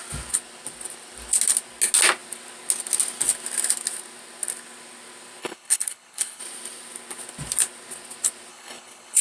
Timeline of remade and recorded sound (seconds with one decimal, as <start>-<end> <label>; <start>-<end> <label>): 0.0-5.4 recorded; 5.4-6.4 remade; 6.4-8.5 recorded; 8.5-9.2 remade